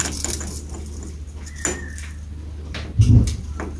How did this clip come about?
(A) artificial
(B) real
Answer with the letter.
B